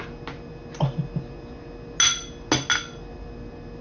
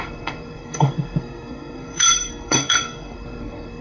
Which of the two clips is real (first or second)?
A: first